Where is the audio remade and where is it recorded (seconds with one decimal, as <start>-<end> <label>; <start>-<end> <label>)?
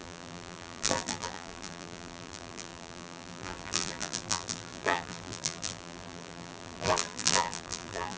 0.0-8.2 remade